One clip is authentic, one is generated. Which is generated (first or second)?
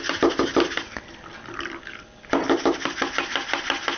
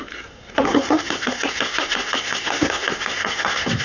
second